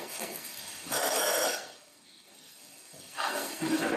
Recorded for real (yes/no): no